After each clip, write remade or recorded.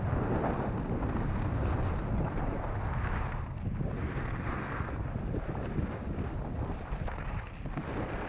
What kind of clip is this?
recorded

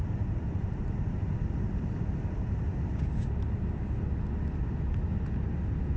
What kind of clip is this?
recorded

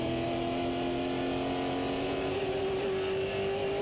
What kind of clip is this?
recorded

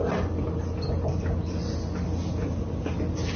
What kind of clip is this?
recorded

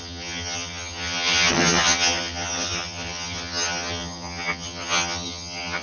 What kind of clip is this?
remade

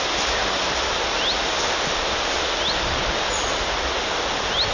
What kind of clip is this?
recorded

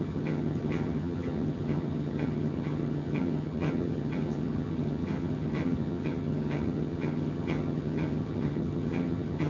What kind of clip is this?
remade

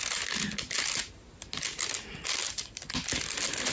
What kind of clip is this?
recorded